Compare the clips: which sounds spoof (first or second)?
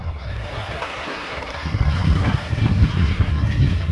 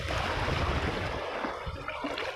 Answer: first